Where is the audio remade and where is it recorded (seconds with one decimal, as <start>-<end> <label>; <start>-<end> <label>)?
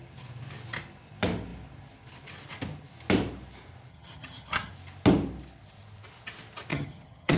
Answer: 0.0-3.9 recorded; 3.9-4.7 remade; 4.7-6.7 recorded; 6.7-7.4 remade